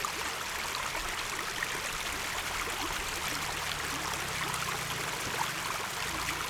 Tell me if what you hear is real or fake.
real